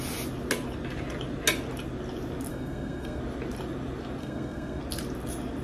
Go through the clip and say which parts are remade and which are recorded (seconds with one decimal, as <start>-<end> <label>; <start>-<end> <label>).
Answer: 0.0-2.5 recorded; 2.5-3.2 remade; 3.2-4.2 recorded; 4.2-4.8 remade; 4.8-5.6 recorded